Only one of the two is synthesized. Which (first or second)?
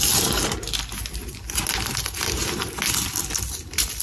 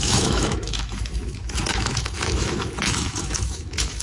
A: second